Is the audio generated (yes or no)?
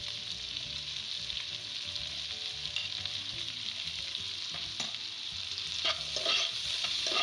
no